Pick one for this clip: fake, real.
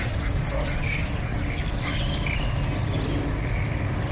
real